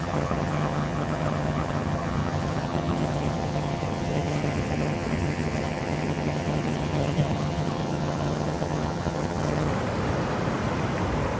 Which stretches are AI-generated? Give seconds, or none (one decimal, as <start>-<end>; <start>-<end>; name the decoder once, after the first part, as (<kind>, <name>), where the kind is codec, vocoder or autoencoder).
0.0-9.7 (vocoder, HiFi-GAN)